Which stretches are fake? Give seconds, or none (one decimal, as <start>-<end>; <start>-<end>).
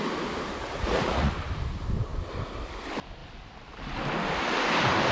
0.6-1.3